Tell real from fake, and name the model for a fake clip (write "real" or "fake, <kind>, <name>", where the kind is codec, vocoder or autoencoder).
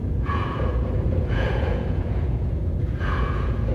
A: fake, vocoder, Vocos